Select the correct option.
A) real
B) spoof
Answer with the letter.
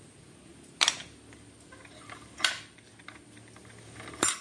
A